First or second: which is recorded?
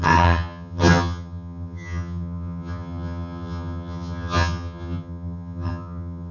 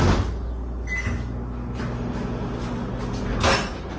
second